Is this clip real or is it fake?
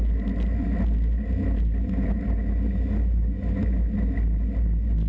real